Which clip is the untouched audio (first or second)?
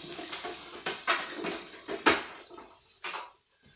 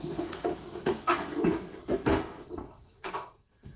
first